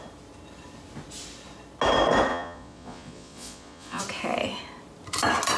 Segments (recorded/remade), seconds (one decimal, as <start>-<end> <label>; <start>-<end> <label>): 0.0-2.3 recorded; 2.3-4.0 remade; 4.0-5.6 recorded